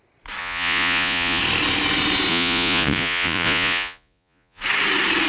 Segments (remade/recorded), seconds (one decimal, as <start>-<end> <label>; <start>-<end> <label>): 0.0-0.4 recorded; 0.4-1.4 remade; 1.4-2.3 recorded; 2.3-4.6 remade; 4.6-5.3 recorded